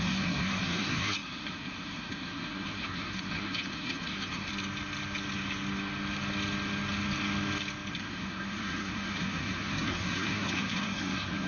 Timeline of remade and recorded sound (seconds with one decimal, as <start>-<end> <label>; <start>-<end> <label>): 0.0-4.5 remade; 4.5-7.9 recorded; 7.9-11.5 remade